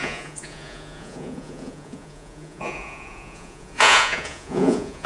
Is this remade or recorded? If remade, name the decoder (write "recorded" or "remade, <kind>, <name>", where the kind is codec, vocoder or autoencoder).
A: remade, vocoder, Vocos